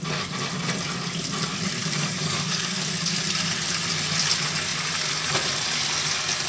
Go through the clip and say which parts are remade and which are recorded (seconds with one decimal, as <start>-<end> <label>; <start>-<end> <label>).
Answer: 0.0-1.8 recorded; 1.8-2.9 remade; 2.9-6.5 recorded